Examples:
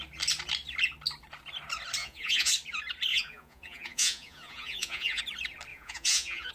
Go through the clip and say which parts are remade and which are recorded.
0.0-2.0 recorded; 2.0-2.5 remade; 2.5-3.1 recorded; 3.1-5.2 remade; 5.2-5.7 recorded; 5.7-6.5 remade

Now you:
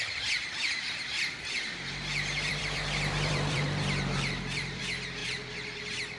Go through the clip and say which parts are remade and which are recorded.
0.0-1.1 recorded; 1.1-4.8 remade; 4.8-5.2 recorded; 5.2-5.8 remade; 5.8-6.2 recorded

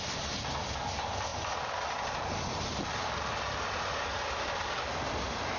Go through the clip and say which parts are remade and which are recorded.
0.0-5.6 recorded

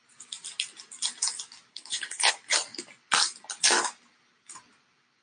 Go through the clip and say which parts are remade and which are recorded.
0.0-1.7 recorded; 1.7-2.3 remade; 2.3-5.2 recorded